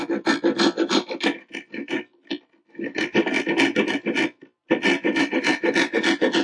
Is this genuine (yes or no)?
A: yes